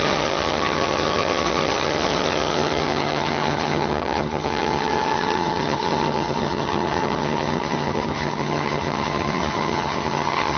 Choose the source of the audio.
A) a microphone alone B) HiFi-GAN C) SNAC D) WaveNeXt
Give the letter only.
B